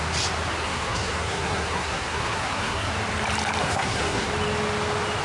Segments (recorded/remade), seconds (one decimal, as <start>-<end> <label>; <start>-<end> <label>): 0.0-0.6 recorded; 0.6-2.9 remade; 2.9-3.6 recorded; 3.6-4.3 remade; 4.3-5.2 recorded